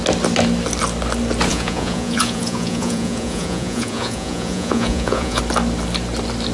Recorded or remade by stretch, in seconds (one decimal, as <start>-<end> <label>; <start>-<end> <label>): 0.0-1.5 recorded; 1.5-5.4 remade; 5.4-6.5 recorded

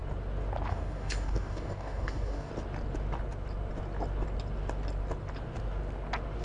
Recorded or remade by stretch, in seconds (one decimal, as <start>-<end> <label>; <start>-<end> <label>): 0.0-0.7 recorded; 0.7-2.5 remade; 2.5-6.4 recorded

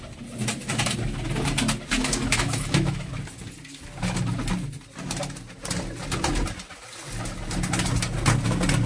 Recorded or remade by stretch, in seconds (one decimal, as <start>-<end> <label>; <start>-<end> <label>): 0.0-2.0 recorded; 2.0-3.1 remade; 3.1-8.9 recorded

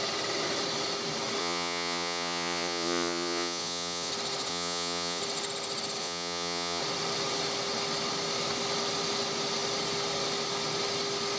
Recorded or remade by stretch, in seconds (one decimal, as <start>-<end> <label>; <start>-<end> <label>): 0.0-1.4 recorded; 1.4-4.1 remade; 4.1-4.5 recorded; 4.5-5.2 remade; 5.2-6.0 recorded; 6.0-6.8 remade; 6.8-11.4 recorded

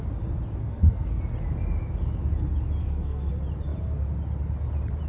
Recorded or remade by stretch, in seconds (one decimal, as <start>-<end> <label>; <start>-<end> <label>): 0.0-0.6 recorded; 0.6-1.2 remade; 1.2-2.8 recorded; 2.8-3.3 remade; 3.3-5.1 recorded

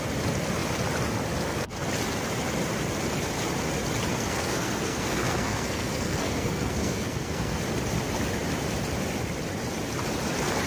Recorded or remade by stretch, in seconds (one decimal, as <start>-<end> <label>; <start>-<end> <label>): 0.0-4.1 recorded; 4.1-7.6 remade; 7.6-10.7 recorded

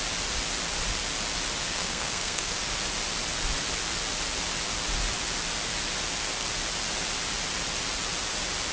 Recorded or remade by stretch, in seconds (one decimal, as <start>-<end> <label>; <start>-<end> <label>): 0.0-1.6 recorded; 1.6-2.5 remade; 2.5-8.7 recorded

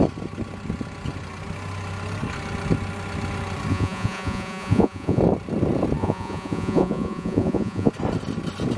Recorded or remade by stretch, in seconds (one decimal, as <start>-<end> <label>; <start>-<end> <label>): 0.0-3.7 recorded; 3.7-5.2 remade; 5.2-6.0 recorded; 6.0-7.9 remade; 7.9-8.8 recorded